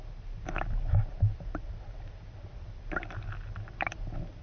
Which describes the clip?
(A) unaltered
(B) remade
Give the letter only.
A